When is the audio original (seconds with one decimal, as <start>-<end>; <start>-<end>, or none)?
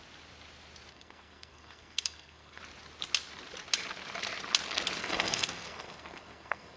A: 0.0-0.9; 2.6-5.0